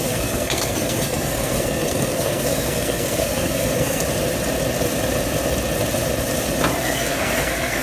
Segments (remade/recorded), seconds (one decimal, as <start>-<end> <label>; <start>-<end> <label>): 0.0-4.0 remade; 4.0-6.8 recorded; 6.8-7.8 remade